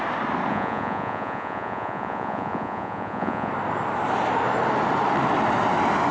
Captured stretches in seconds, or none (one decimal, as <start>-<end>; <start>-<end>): 0.0-0.5; 3.5-6.1